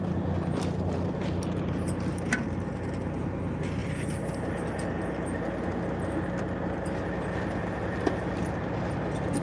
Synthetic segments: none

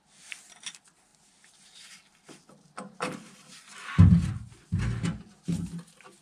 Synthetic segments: none

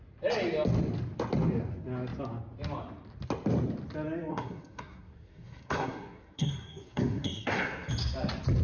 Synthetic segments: 4.3-7.9

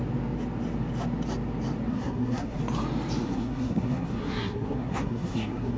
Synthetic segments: 1.9-2.6; 3.2-5.8